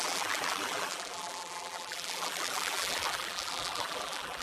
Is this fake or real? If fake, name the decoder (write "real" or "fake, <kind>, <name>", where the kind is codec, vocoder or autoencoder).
fake, vocoder, BigVGAN v2